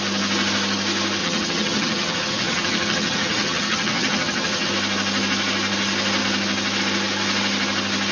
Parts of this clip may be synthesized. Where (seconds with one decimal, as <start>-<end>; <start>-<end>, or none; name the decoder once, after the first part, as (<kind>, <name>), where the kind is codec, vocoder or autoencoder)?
1.2-4.7 (vocoder, HiFi-GAN)